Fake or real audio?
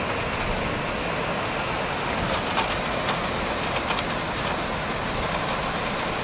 real